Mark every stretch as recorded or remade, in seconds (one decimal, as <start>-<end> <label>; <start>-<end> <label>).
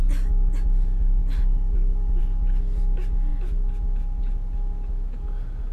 0.0-5.7 recorded